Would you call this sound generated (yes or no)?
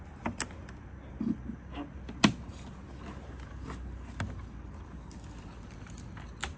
no